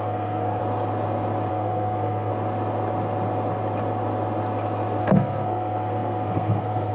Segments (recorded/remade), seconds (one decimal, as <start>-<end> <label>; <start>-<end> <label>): 0.0-0.6 remade; 0.6-1.5 recorded; 1.5-2.3 remade; 2.3-5.0 recorded; 5.0-6.9 remade